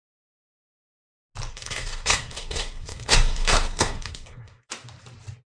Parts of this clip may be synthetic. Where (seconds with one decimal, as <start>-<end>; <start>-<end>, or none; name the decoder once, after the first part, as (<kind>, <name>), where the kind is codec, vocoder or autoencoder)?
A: 1.5-4.7 (codec, SNAC)